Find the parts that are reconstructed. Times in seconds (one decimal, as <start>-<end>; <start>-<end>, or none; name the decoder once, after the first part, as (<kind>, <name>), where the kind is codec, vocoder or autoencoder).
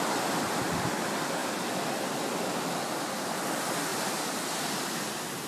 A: none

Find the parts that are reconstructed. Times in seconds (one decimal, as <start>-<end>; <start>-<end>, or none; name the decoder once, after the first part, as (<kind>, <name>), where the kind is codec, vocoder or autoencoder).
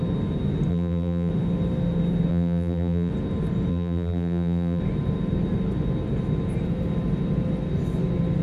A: 0.7-1.3 (vocoder, BigVGAN v2); 2.3-3.1; 3.7-4.8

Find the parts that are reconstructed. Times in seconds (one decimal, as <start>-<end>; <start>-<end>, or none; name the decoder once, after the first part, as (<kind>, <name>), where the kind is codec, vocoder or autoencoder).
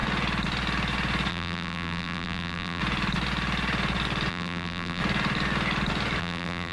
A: 1.3-2.8 (vocoder, BigVGAN v2); 4.3-5.0; 6.2-6.7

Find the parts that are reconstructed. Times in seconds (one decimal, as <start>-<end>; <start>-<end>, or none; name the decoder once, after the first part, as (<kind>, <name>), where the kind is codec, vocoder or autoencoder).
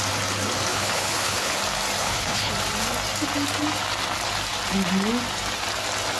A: 0.7-1.6 (codec, HILCodec); 2.0-2.5